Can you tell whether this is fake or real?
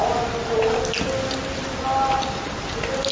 real